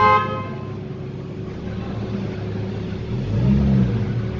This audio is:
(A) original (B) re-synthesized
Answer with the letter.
A